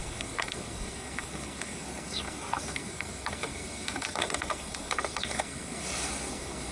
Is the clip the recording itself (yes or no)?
no